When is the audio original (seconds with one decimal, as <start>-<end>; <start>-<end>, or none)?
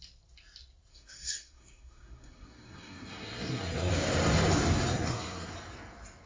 0.0-0.9; 3.9-4.9; 5.5-6.3